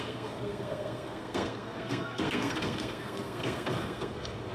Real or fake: fake